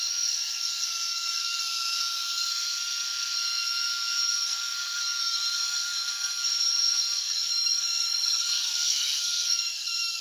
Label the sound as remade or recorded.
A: remade